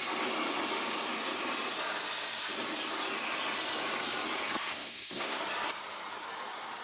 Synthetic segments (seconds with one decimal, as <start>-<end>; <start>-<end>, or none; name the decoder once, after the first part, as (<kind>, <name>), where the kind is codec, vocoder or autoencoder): 4.6-5.4 (codec, SNAC)